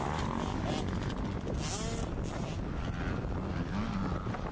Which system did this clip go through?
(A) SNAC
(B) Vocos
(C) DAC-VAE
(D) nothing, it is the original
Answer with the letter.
D